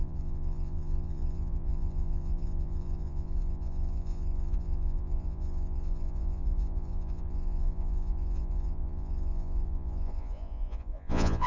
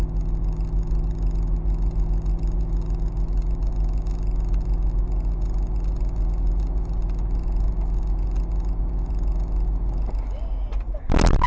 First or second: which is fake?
first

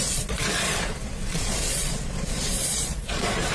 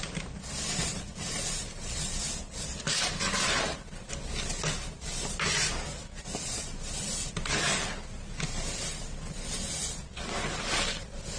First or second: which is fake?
first